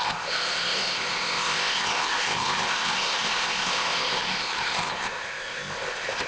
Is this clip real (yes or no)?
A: no